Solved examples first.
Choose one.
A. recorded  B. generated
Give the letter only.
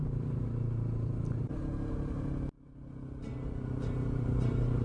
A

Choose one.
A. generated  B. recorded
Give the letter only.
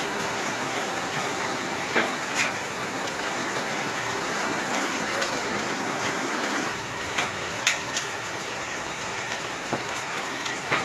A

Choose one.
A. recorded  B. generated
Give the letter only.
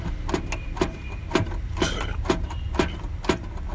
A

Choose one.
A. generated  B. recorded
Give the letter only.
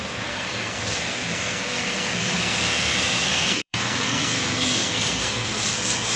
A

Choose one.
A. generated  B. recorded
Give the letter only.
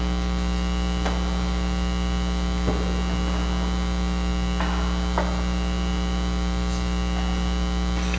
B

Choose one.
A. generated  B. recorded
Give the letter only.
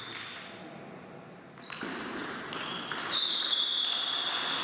B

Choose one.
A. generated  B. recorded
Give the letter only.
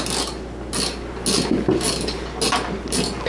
B